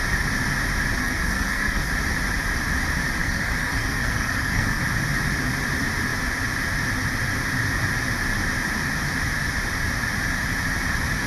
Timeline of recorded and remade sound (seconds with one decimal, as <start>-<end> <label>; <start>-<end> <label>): 0.0-1.0 recorded; 1.0-1.9 remade; 1.9-3.2 recorded; 3.2-4.8 remade; 4.8-11.3 recorded